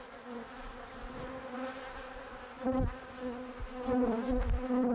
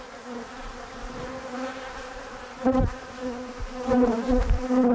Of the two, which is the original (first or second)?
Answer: first